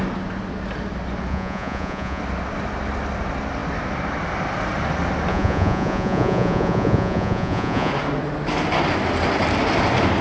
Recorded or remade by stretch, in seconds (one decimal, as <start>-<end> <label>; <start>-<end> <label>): 0.0-1.3 recorded; 1.3-2.2 remade; 2.2-5.3 recorded; 5.3-7.9 remade; 7.9-10.2 recorded